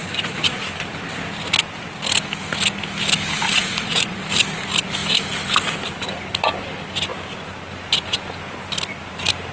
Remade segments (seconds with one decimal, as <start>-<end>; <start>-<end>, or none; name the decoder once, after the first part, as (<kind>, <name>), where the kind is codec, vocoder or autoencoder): 0.0-0.7 (vocoder, Vocos); 3.3-4.2